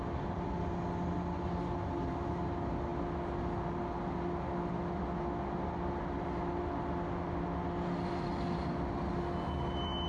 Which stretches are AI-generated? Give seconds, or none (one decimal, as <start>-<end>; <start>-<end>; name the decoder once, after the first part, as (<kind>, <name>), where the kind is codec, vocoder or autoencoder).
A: none